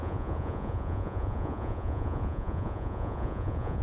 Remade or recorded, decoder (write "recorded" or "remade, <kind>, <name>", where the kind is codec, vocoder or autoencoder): remade, vocoder, Vocos